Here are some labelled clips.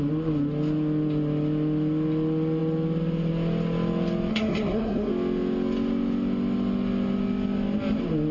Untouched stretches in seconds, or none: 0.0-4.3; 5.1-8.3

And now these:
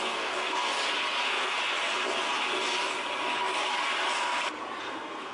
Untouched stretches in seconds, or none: 0.7-1.2; 1.6-4.8

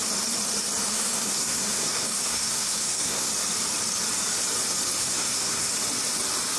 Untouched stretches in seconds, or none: 0.0-0.9; 3.3-5.0; 5.7-6.6

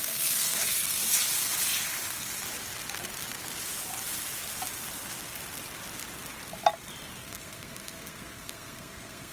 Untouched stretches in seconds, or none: 1.0-7.2

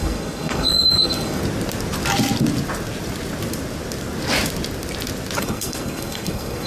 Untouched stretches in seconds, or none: 1.4-5.4